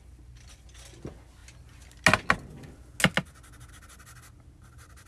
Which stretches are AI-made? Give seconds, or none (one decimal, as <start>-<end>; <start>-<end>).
none